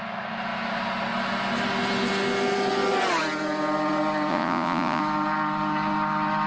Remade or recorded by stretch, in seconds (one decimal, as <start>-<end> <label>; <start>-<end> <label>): 0.0-4.3 recorded; 4.3-5.0 remade; 5.0-6.5 recorded